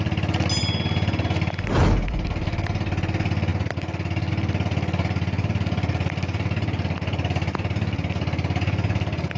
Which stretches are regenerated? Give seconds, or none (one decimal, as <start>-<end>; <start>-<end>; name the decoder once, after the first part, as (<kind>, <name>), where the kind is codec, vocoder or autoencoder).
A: none

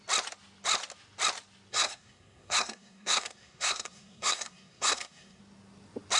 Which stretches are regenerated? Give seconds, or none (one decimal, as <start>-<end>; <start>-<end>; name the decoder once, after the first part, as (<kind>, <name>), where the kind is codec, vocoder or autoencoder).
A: 1.7-5.4 (codec, SNAC)

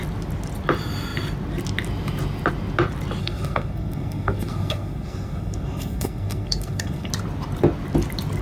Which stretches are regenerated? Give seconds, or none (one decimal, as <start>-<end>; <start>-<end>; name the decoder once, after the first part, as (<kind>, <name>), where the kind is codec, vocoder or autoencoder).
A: 3.2-7.1 (codec, SNAC)

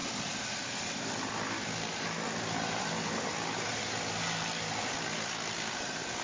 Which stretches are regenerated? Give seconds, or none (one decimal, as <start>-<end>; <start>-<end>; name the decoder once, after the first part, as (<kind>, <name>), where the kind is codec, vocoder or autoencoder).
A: none

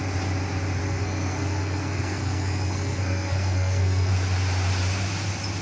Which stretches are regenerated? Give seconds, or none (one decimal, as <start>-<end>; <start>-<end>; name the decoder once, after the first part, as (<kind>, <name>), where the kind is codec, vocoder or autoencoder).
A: 0.8-4.1 (codec, SNAC)